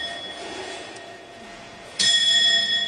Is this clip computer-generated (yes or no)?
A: yes